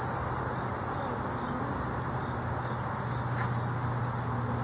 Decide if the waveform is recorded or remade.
recorded